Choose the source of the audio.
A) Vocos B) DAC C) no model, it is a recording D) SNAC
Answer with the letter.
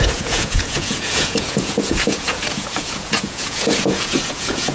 A